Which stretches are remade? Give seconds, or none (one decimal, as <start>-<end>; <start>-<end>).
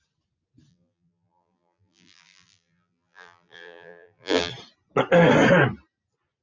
0.7-4.5